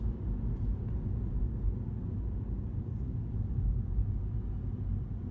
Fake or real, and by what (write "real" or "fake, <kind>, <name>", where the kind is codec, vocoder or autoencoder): real